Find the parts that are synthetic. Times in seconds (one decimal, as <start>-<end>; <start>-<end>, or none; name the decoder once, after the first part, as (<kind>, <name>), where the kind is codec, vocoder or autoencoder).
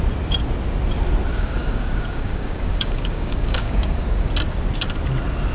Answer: 1.3-4.3 (codec, DAC)